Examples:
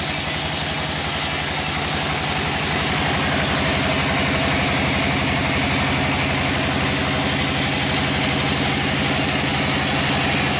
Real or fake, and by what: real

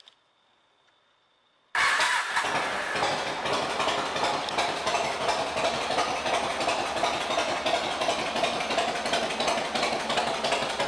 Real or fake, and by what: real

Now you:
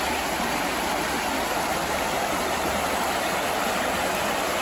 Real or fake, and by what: real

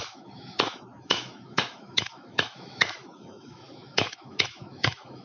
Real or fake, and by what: fake, autoencoder, DAC-VAE